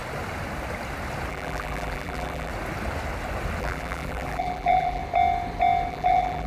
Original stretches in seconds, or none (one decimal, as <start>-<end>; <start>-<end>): 0.0-1.3; 2.5-3.6; 5.0-5.9